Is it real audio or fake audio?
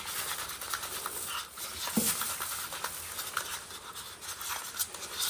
real